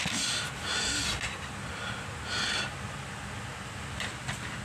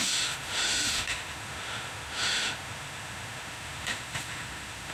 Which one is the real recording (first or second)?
first